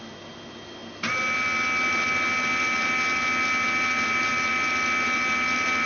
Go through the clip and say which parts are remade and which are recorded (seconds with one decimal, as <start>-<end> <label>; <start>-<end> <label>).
0.0-5.9 recorded